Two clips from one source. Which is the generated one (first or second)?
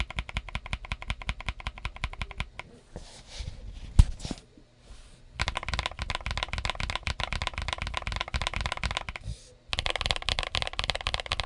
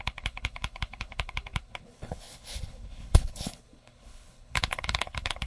second